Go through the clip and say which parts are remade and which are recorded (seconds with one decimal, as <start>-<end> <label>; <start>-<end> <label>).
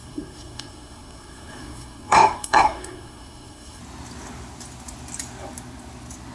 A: 0.0-3.8 remade; 3.8-6.3 recorded